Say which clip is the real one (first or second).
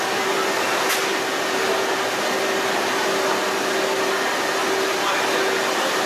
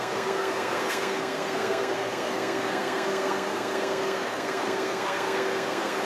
first